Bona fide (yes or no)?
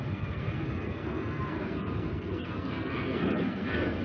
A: no